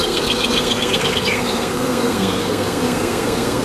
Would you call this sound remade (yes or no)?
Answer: yes